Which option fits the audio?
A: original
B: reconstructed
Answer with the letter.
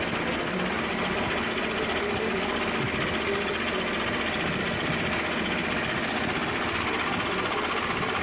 A